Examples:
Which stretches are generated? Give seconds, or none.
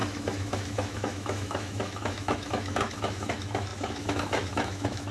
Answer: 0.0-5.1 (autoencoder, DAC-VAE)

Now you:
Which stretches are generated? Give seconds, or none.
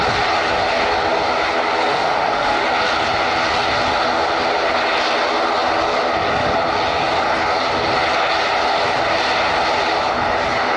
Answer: 1.9-2.6 (autoencoder, DAC-VAE)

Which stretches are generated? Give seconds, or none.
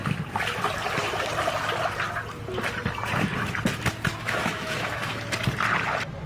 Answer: 4.2-5.2 (autoencoder, DAC-VAE)